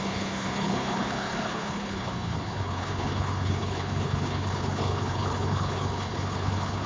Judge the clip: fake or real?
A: fake